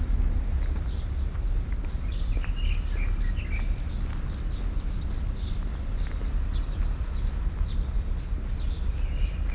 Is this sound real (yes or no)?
yes